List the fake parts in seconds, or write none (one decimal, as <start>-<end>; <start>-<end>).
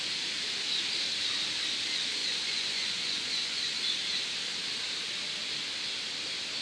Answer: 2.2-3.7